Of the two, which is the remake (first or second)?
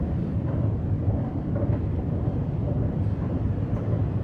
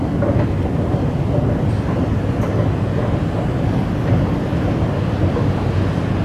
first